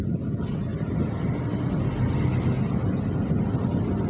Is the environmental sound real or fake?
real